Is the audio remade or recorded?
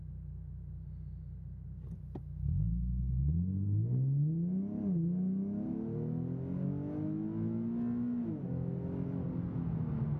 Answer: recorded